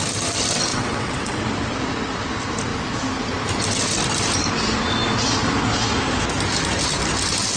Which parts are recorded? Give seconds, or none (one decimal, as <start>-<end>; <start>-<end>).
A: 0.0-0.7; 1.4-7.6